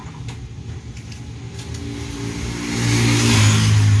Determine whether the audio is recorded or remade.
recorded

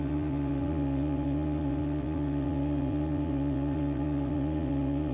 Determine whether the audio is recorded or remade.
remade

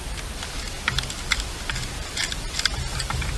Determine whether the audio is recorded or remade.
recorded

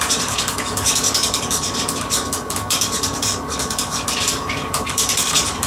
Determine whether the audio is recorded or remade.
remade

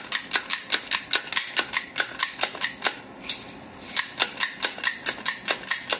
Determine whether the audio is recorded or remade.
recorded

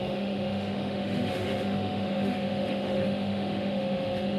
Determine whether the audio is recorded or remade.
remade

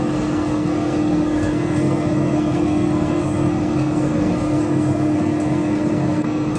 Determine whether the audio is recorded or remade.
remade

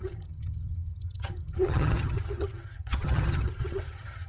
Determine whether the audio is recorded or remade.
remade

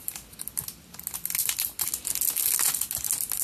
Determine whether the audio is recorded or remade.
recorded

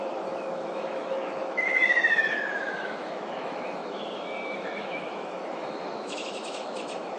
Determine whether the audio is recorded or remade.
remade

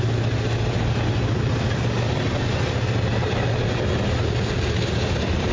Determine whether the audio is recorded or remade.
recorded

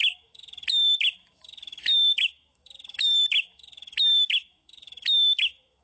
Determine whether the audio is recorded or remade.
remade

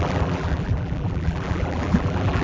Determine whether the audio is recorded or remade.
remade